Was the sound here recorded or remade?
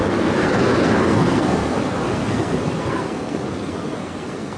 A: remade